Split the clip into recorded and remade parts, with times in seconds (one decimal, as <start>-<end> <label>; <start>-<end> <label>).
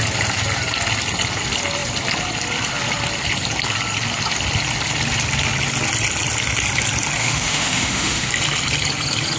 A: 0.0-7.2 recorded; 7.2-8.3 remade; 8.3-9.4 recorded